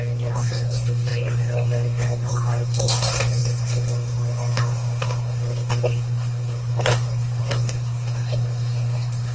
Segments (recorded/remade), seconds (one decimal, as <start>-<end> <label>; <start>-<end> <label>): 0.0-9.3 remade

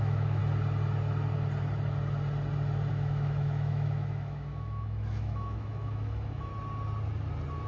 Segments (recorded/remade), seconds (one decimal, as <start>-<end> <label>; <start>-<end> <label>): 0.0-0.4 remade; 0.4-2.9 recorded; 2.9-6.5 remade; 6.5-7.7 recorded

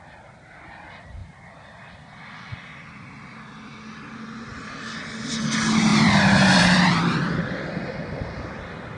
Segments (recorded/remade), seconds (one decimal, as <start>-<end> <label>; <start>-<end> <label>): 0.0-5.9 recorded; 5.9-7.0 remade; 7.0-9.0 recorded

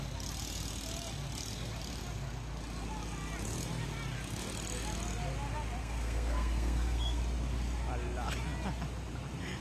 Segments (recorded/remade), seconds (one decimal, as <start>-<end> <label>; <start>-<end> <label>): 0.0-5.8 recorded; 5.8-7.2 remade; 7.2-9.6 recorded

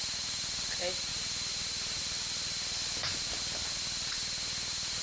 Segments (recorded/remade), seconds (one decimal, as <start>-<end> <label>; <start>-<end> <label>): 0.0-5.0 recorded